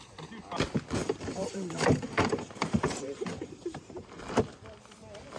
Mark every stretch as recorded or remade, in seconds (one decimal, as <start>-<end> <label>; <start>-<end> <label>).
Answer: 0.0-1.0 recorded; 1.0-4.2 remade; 4.2-5.4 recorded